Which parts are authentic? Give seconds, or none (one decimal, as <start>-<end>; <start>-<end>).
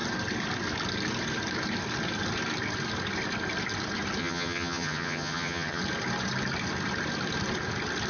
0.0-4.2; 5.8-8.1